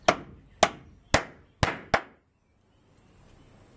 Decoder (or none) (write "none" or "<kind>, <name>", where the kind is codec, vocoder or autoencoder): none